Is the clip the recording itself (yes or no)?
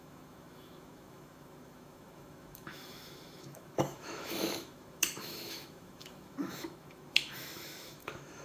no